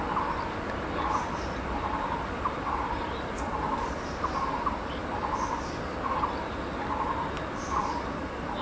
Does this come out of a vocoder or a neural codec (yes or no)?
no